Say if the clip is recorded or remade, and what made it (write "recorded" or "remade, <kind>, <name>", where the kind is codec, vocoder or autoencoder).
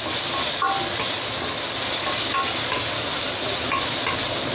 recorded